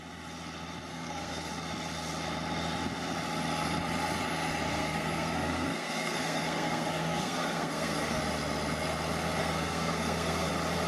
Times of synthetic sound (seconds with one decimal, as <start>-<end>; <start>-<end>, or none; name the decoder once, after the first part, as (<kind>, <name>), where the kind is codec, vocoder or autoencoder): 0.9-1.5 (codec, SNAC); 4.7-8.2; 9.4-10.5